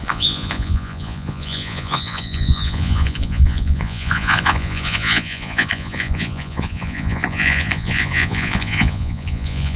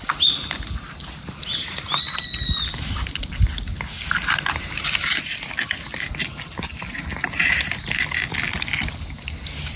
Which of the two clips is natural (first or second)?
second